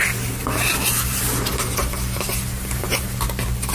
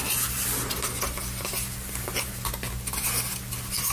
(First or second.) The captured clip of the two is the second